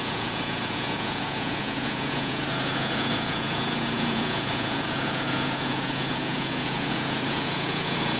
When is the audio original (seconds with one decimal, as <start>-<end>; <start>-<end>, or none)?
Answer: none